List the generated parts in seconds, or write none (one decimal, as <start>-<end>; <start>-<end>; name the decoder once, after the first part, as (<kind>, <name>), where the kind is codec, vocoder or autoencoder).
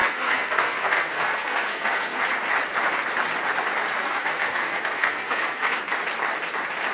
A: 0.0-2.2 (codec, SNAC); 4.0-5.8